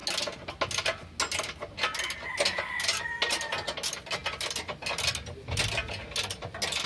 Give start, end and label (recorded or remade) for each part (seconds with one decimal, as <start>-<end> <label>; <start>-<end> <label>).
0.0-6.9 recorded